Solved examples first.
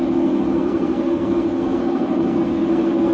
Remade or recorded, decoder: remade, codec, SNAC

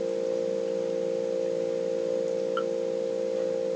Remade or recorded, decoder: recorded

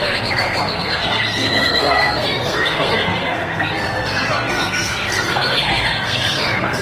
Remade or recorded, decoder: remade, codec, SNAC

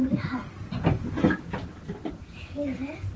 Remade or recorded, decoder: recorded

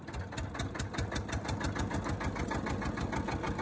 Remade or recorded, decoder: recorded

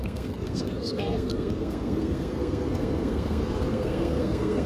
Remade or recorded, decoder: remade, codec, SNAC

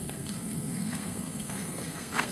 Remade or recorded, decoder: remade, codec, SNAC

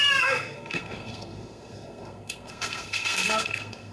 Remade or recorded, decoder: remade, codec, SNAC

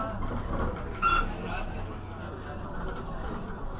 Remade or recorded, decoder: recorded